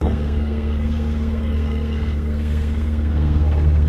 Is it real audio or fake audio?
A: fake